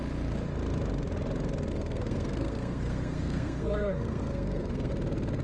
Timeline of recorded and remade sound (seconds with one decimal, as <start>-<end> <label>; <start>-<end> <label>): 0.0-1.7 recorded; 1.7-4.9 remade; 4.9-5.4 recorded